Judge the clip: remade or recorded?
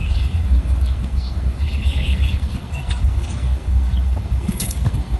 remade